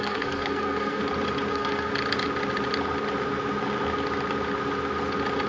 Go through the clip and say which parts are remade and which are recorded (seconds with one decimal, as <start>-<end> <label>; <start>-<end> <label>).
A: 0.0-1.0 remade; 1.0-1.5 recorded; 1.5-1.9 remade; 1.9-5.5 recorded